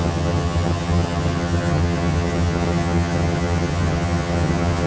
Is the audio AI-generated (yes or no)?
yes